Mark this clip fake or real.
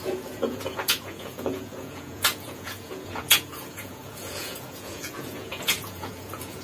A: fake